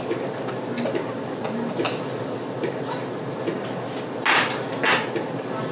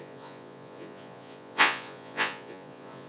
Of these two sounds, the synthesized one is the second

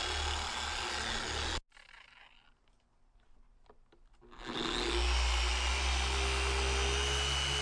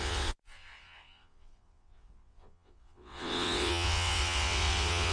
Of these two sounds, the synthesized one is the second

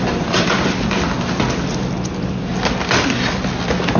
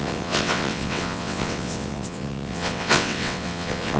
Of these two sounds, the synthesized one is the second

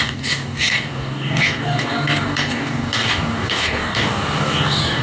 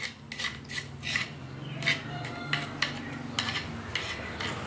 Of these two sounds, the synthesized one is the first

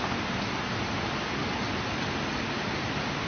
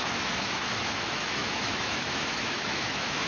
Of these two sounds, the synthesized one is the second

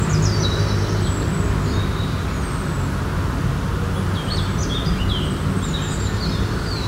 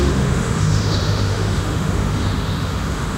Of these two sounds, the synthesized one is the second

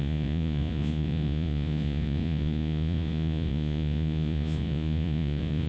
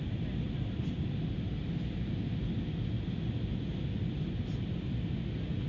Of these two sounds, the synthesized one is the first